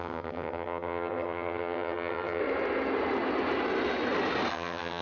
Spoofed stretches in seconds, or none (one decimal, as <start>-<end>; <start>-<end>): 0.0-2.4; 4.5-5.0